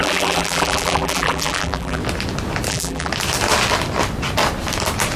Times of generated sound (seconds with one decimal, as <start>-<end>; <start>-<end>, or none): 0.0-2.0; 2.7-3.1